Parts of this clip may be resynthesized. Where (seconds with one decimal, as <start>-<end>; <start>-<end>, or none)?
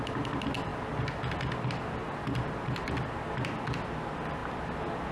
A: none